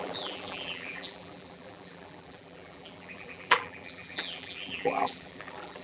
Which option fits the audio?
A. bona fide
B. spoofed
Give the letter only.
B